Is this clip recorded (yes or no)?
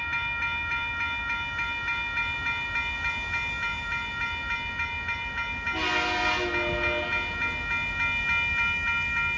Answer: yes